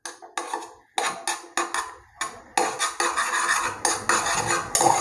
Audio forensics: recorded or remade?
recorded